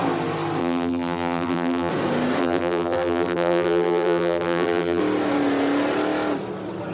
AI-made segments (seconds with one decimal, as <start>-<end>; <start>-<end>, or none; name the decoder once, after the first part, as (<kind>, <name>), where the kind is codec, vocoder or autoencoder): 0.6-1.9 (vocoder, BigVGAN v2); 2.4-5.0